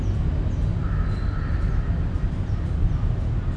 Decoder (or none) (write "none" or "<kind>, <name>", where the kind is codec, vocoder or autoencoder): none